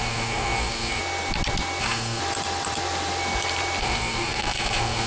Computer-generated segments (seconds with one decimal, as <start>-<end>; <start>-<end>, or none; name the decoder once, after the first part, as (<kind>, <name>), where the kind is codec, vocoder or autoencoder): 0.0-1.0 (codec, SNAC); 1.8-2.2; 3.8-5.1